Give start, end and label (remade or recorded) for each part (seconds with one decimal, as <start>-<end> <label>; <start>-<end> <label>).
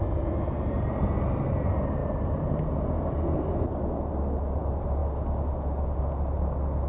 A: 0.0-6.9 recorded